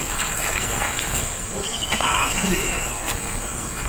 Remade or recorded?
remade